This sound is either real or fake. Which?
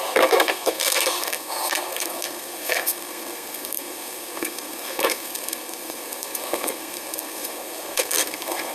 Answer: fake